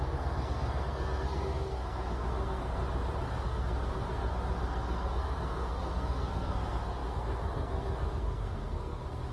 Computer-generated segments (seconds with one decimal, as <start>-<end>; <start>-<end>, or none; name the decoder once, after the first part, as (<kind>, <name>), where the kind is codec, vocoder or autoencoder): 0.0-2.8 (codec, SNAC); 3.3-9.3